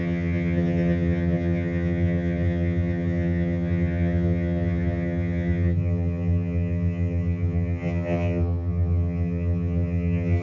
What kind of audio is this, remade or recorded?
remade